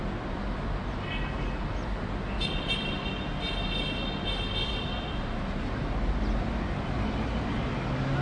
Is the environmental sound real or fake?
real